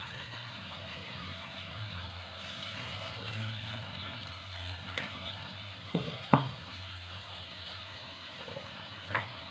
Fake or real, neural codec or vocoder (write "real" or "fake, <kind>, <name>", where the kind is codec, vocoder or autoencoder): fake, codec, SNAC